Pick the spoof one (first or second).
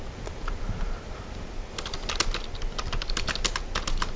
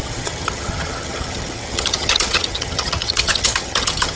second